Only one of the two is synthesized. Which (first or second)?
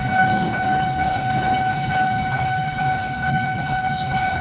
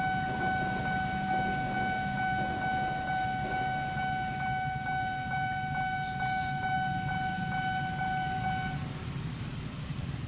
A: first